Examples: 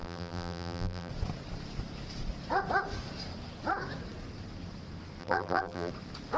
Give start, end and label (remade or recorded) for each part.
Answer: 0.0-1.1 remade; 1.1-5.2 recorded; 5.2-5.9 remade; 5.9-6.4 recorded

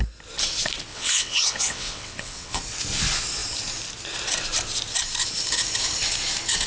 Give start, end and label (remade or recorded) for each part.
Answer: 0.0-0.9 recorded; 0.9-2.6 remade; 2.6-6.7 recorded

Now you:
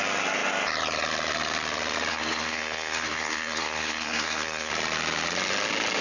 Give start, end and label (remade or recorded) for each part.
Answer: 0.0-2.1 recorded; 2.1-4.7 remade; 4.7-6.0 recorded

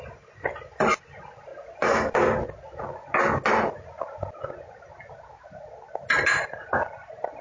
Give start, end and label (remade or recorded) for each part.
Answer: 0.0-7.4 recorded

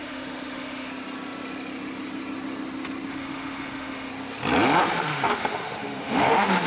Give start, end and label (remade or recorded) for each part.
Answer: 0.0-0.9 remade; 0.9-3.1 recorded; 3.1-4.1 remade; 4.1-4.8 recorded; 4.8-6.7 remade

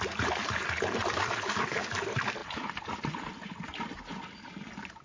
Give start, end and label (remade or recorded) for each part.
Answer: 0.0-5.0 recorded